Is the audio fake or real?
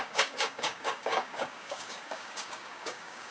fake